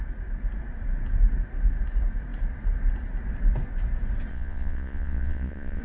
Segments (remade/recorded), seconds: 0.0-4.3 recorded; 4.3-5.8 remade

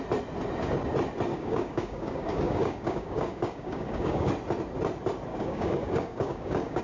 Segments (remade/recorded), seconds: 0.0-1.3 recorded; 1.3-4.3 remade; 4.3-5.3 recorded; 5.3-6.8 remade

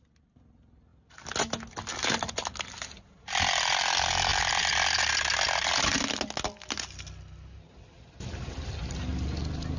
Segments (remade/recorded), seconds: 0.0-9.8 recorded

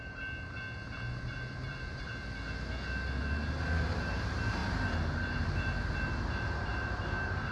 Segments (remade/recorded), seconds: 0.0-2.1 remade; 2.1-3.8 recorded; 3.8-7.5 remade

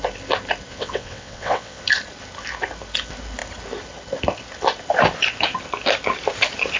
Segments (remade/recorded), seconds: 0.0-0.7 recorded; 0.7-1.8 remade; 1.8-6.8 recorded

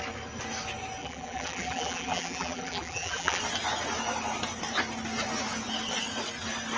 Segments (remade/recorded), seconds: 0.0-1.0 recorded; 1.0-3.4 remade; 3.4-6.8 recorded

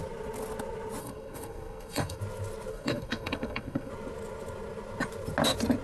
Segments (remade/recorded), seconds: 0.0-1.0 recorded; 1.0-2.2 remade; 2.2-2.7 recorded; 2.7-3.9 remade; 3.9-5.8 recorded

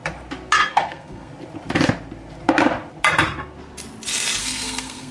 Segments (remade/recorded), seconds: 0.0-0.7 recorded; 0.7-1.3 remade; 1.3-4.4 recorded; 4.4-5.1 remade